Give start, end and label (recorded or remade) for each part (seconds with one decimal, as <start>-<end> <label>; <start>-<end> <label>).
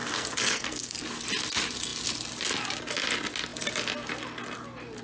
0.0-1.0 remade; 1.0-5.0 recorded